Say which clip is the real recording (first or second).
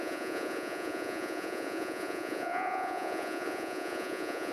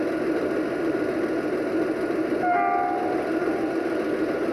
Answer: second